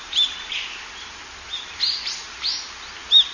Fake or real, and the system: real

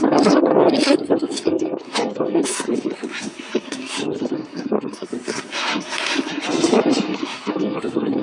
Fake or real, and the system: fake, codec, SNAC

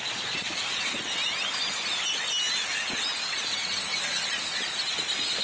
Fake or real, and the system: real